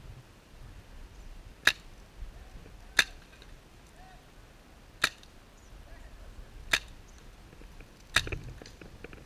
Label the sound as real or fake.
real